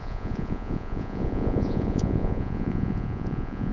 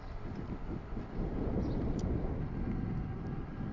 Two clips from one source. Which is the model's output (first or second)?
first